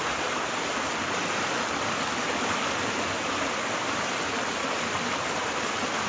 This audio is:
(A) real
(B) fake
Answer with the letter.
A